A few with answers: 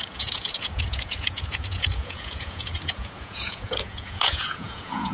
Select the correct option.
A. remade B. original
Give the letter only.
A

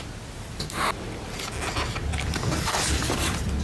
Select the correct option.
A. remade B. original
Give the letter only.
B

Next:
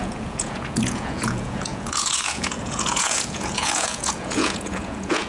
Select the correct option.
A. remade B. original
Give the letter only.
A